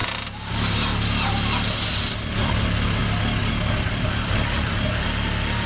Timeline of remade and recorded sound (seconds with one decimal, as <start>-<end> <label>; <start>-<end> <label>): 0.0-3.0 remade; 3.0-3.5 recorded; 3.5-5.7 remade